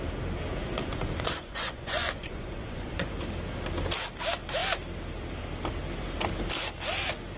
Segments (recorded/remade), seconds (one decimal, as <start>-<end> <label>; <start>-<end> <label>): 0.0-0.5 recorded; 0.5-3.1 remade; 3.1-7.4 recorded

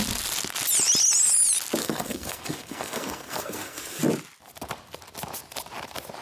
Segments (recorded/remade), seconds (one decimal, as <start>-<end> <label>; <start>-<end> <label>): 0.0-1.8 recorded; 1.8-4.0 remade; 4.0-6.2 recorded

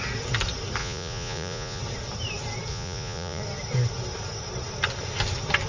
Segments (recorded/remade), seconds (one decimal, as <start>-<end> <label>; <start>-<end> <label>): 0.0-0.8 recorded; 0.8-1.8 remade; 1.8-2.7 recorded; 2.7-3.4 remade; 3.4-5.7 recorded

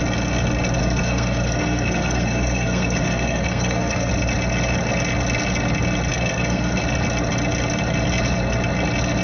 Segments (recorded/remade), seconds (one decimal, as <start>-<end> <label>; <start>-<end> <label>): 0.0-0.8 recorded; 0.8-4.1 remade; 4.1-6.1 recorded; 6.1-6.8 remade; 6.8-9.2 recorded

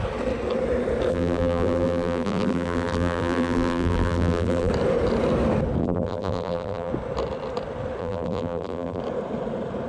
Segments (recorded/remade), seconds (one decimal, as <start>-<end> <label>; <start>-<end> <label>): 0.0-1.1 recorded; 1.1-4.7 remade; 4.7-5.8 recorded; 5.8-6.9 remade; 6.9-8.0 recorded; 8.0-9.0 remade; 9.0-9.9 recorded

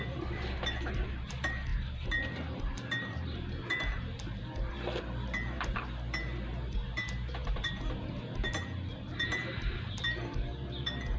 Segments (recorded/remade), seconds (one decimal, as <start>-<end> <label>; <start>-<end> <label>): 0.0-11.2 remade

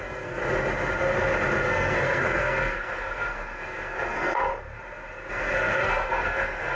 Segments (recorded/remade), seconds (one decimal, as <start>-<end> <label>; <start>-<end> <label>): 0.0-0.4 remade; 0.4-1.7 recorded; 1.7-4.5 remade; 4.5-5.3 recorded; 5.3-6.8 remade

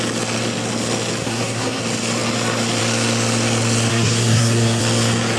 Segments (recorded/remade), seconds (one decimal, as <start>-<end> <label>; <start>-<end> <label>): 0.0-1.2 recorded; 1.2-1.8 remade; 1.8-3.9 recorded; 3.9-4.8 remade; 4.8-5.4 recorded